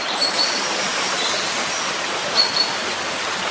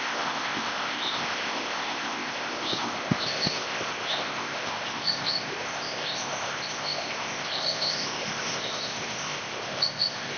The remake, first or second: second